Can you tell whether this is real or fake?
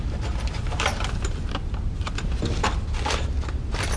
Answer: real